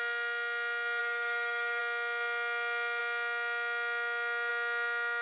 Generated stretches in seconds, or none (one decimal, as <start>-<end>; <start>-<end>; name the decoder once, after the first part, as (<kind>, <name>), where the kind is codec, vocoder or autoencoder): 1.0-1.8 (codec, DAC)